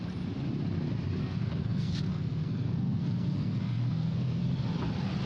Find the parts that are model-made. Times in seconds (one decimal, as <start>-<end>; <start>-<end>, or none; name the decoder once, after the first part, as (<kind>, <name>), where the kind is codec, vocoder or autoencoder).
1.2-4.4 (codec, SNAC)